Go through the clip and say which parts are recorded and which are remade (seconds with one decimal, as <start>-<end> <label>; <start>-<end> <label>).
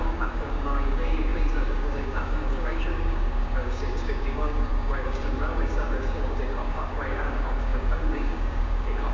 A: 0.0-9.1 remade